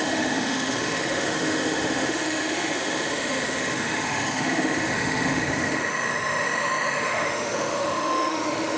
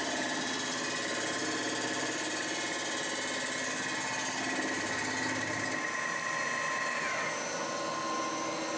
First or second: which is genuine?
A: second